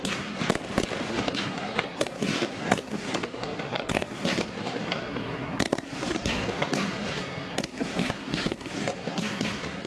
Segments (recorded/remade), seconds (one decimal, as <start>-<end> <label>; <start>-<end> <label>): 0.0-0.4 remade; 0.4-1.1 recorded; 1.1-9.9 remade